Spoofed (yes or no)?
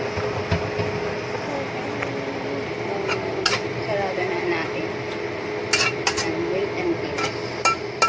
no